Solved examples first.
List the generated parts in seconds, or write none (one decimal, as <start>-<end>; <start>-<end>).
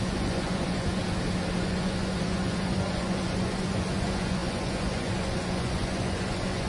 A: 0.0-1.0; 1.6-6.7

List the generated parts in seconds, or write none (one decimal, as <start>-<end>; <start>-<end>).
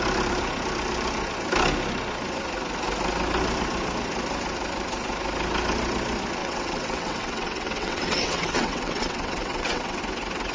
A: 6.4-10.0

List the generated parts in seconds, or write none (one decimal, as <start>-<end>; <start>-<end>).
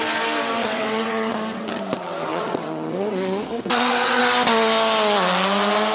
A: 0.6-1.3; 2.3-4.2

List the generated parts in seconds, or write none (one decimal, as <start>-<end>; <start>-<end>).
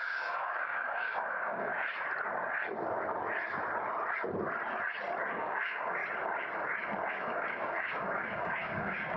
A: 0.0-1.7; 5.3-6.0; 7.1-9.2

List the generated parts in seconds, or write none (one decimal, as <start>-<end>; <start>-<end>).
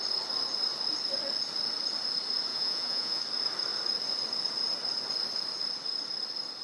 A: 2.5-3.2